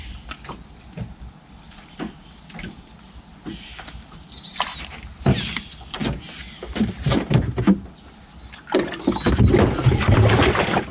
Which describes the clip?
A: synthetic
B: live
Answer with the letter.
B